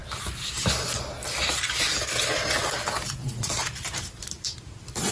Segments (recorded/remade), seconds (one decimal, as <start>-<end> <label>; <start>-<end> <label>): 0.0-3.2 recorded; 3.2-5.1 remade